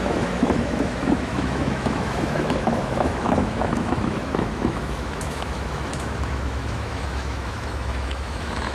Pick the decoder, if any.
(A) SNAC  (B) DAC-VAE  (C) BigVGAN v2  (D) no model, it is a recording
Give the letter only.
B